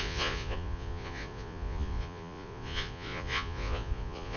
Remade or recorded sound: remade